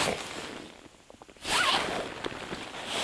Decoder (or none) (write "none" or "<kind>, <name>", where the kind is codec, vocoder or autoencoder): none